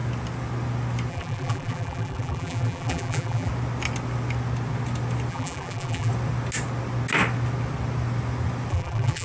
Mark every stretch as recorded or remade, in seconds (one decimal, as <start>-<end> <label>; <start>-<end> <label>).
0.0-1.1 recorded; 1.1-3.5 remade; 3.5-5.3 recorded; 5.3-6.1 remade; 6.1-8.7 recorded; 8.7-9.2 remade